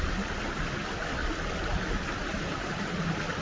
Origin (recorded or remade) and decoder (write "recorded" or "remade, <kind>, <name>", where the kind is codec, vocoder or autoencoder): recorded